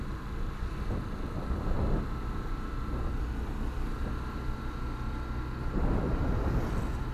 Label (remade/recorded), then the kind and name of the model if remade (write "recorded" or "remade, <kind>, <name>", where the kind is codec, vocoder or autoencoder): recorded